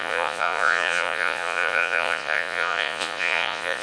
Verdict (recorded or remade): remade